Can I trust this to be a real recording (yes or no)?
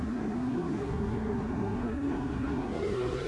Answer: no